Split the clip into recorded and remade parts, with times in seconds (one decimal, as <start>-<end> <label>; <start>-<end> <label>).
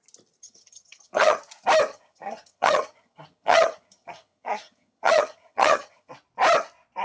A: 0.0-0.4 recorded; 0.4-1.4 remade; 1.4-1.9 recorded; 1.9-6.1 remade; 6.1-7.0 recorded